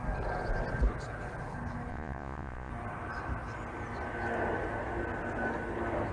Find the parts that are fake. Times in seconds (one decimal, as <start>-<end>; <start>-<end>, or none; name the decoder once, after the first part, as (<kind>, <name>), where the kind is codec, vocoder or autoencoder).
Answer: 1.9-2.7 (vocoder, Vocos)